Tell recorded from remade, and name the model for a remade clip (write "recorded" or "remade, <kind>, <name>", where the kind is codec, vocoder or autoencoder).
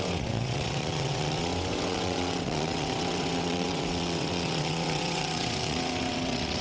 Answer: remade, vocoder, WaveNeXt